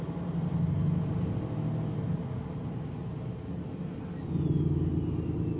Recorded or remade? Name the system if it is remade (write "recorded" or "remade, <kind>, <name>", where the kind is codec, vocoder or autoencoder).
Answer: recorded